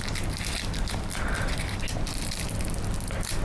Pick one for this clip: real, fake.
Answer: real